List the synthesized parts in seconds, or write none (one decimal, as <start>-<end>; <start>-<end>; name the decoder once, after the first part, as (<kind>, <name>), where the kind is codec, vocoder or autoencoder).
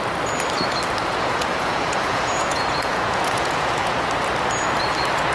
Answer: 1.0-4.1 (vocoder, Vocos)